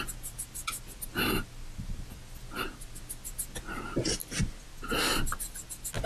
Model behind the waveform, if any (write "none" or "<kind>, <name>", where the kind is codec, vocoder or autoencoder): none